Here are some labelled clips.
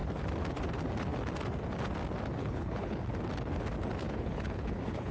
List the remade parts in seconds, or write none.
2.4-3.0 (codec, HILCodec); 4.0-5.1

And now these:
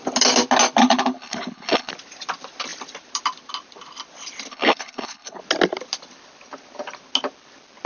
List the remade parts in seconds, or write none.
0.8-1.9 (codec, HILCodec); 4.5-5.4

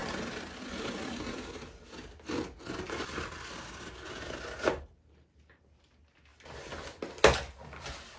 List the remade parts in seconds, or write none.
none

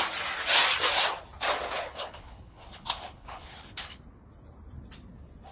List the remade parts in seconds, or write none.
1.8-4.0 (codec, HILCodec)